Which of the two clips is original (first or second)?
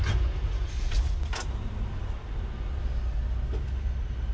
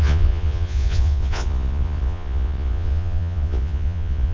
first